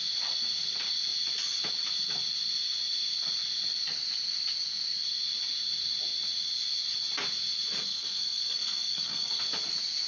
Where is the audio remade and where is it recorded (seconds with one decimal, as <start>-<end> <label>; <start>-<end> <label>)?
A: 0.0-7.8 recorded; 7.8-9.4 remade; 9.4-10.1 recorded

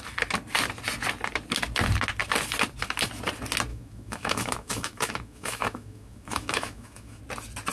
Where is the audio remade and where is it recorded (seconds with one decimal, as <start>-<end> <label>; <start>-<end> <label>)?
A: 0.0-3.7 recorded; 3.7-7.2 remade; 7.2-7.7 recorded

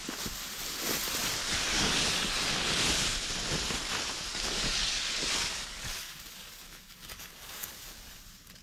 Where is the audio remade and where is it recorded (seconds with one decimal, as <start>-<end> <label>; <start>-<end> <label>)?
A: 0.0-1.4 recorded; 1.4-2.5 remade; 2.5-4.3 recorded; 4.3-8.2 remade; 8.2-8.6 recorded

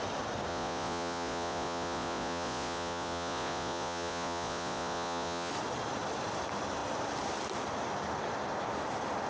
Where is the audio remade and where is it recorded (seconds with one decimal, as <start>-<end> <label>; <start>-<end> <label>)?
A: 0.0-0.5 recorded; 0.5-5.5 remade; 5.5-9.3 recorded

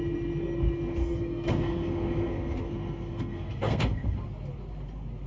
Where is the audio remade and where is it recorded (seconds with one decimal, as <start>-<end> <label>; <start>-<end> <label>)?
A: 0.0-1.0 recorded; 1.0-4.2 remade; 4.2-5.3 recorded

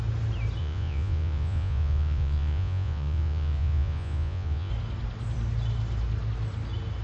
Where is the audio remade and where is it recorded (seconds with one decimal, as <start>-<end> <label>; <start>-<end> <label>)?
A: 0.0-0.6 recorded; 0.6-4.7 remade; 4.7-7.0 recorded